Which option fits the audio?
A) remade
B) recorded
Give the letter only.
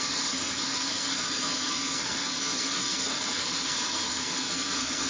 A